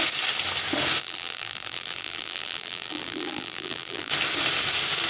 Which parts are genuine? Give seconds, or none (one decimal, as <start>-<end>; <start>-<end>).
0.0-1.0; 4.1-5.1